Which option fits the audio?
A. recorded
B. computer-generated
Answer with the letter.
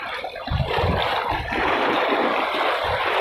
B